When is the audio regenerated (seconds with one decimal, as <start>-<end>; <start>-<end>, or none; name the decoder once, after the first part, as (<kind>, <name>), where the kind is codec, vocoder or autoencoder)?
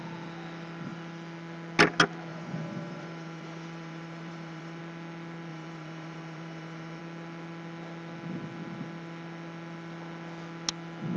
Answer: 2.3-4.8 (vocoder, Vocos); 5.5-7.0